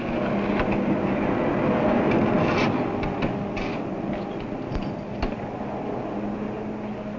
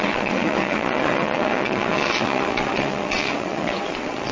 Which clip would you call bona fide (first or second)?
first